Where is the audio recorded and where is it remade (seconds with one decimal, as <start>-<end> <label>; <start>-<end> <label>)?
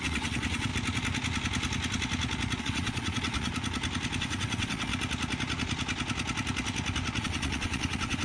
0.0-0.7 remade; 0.7-2.6 recorded; 2.6-3.5 remade; 3.5-4.2 recorded; 4.2-4.9 remade; 4.9-7.2 recorded; 7.2-8.2 remade